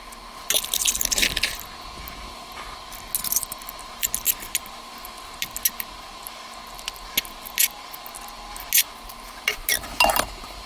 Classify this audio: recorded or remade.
recorded